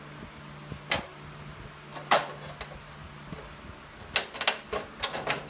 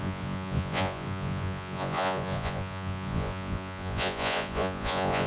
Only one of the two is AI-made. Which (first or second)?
second